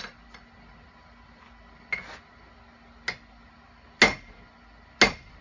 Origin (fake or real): real